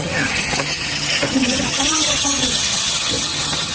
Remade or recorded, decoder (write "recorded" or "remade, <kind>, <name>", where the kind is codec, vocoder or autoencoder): remade, vocoder, HiFi-GAN